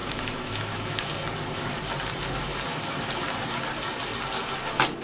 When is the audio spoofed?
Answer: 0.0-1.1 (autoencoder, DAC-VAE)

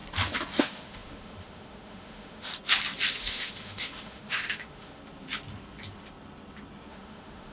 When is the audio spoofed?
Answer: 0.6-2.5 (autoencoder, DAC-VAE); 3.1-5.0; 6.9-7.5

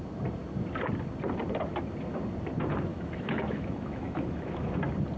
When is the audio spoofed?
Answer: 2.9-4.7 (autoencoder, DAC-VAE)

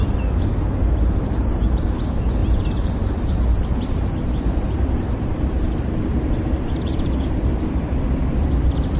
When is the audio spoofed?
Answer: 2.4-7.3 (vocoder, BigVGAN v2)

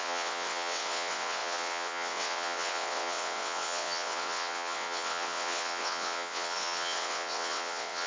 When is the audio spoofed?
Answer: 0.0-8.1 (vocoder, WaveNeXt)

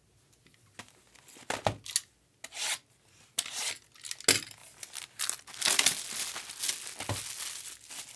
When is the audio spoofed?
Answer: none

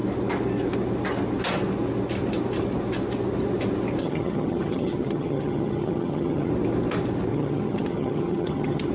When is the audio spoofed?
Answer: 4.0-6.5 (vocoder, HiFi-GAN); 7.3-8.9